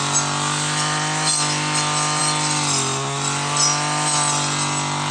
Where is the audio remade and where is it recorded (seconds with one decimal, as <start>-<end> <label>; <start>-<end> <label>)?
0.0-5.1 recorded